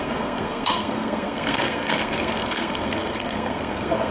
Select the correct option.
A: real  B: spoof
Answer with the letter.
B